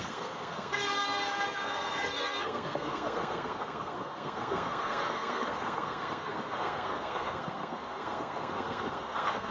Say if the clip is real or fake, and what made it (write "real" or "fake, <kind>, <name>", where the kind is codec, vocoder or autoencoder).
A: fake, codec, SNAC